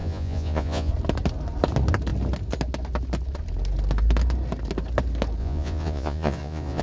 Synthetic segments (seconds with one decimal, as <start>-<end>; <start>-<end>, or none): 0.0-0.9; 5.4-6.8